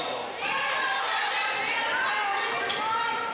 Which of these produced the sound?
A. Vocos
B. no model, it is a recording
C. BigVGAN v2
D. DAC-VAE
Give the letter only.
B